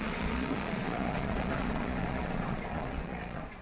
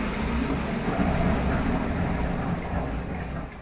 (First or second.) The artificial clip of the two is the first